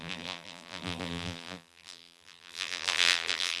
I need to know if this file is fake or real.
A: fake